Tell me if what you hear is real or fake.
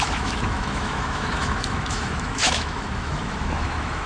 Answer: fake